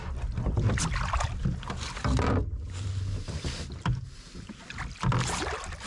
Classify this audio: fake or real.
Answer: real